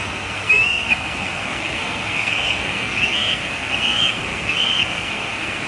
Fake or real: fake